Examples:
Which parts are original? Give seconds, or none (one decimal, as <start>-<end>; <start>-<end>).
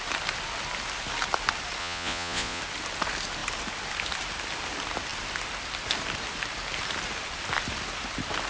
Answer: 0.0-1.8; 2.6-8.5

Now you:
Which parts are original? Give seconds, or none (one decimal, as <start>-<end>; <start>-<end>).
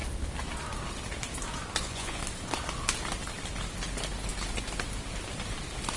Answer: 0.0-1.8; 2.2-6.0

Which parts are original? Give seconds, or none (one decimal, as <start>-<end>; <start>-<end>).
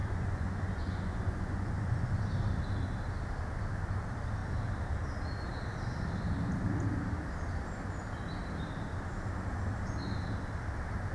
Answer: 2.2-11.1